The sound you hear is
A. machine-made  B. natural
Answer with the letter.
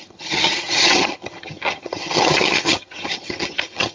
A